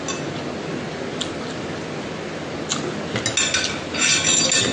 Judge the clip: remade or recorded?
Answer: recorded